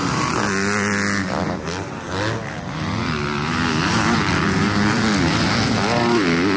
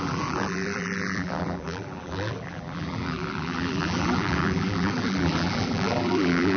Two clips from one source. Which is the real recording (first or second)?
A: first